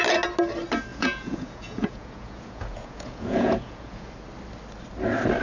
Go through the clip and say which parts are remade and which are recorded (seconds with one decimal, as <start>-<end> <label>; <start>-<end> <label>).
0.0-0.9 recorded; 0.9-4.1 remade; 4.1-5.4 recorded